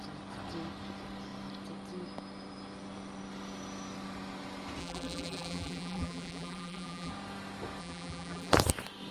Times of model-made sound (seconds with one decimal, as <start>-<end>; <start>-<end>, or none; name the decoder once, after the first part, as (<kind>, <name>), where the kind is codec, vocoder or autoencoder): 4.8-7.1 (vocoder, BigVGAN v2); 7.8-8.5